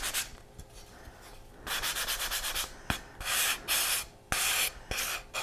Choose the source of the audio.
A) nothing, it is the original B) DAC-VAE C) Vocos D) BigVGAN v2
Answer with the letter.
A